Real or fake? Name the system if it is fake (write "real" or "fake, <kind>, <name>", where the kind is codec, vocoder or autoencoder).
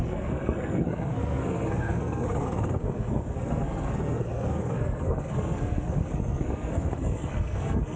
fake, codec, SNAC